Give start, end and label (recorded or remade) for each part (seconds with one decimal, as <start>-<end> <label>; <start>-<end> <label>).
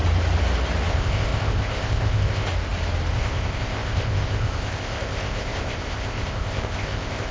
0.0-0.9 recorded; 0.9-2.5 remade; 2.5-3.1 recorded; 3.1-7.3 remade